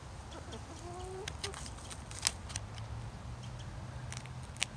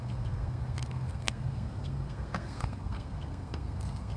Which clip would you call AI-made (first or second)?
second